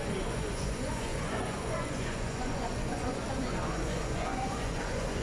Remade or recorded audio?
remade